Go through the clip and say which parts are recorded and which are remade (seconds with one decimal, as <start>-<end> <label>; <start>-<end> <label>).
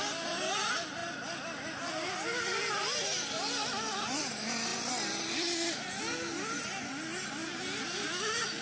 0.0-8.6 recorded